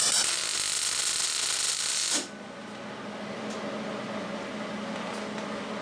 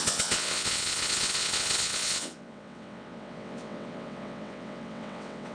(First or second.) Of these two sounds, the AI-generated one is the second